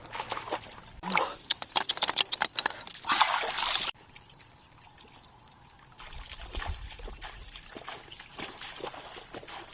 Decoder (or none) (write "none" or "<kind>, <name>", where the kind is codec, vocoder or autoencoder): none